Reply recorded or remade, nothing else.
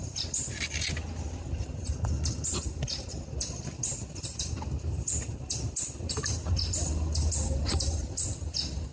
recorded